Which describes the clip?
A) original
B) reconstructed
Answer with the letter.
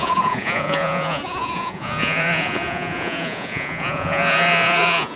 B